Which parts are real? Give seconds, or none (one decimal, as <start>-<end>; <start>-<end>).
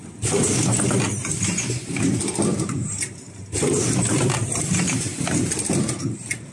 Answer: 0.0-2.5; 3.4-6.5